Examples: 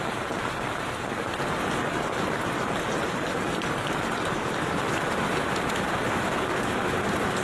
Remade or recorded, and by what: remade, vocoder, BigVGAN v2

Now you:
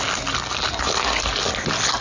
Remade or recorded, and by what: recorded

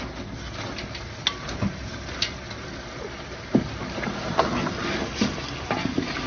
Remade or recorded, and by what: recorded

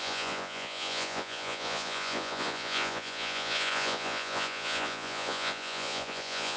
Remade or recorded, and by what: remade, vocoder, Vocos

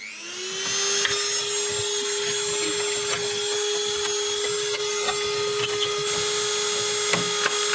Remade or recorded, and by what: recorded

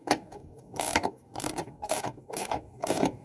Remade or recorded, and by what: remade, codec, DAC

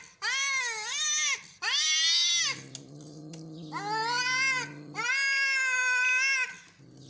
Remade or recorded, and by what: recorded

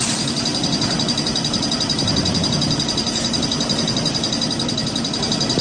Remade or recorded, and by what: remade, vocoder, BigVGAN v2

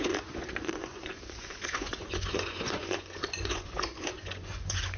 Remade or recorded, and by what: remade, vocoder, Vocos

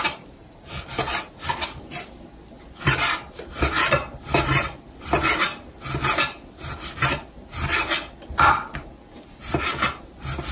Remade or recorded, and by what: recorded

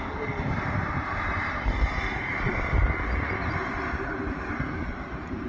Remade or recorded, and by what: recorded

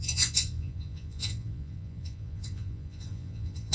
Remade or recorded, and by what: remade, vocoder, Vocos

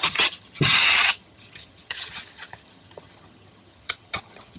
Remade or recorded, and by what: remade, vocoder, HiFi-GAN